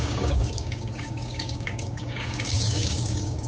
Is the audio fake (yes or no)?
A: yes